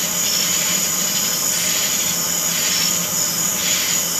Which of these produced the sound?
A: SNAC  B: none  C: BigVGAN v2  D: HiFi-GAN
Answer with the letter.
B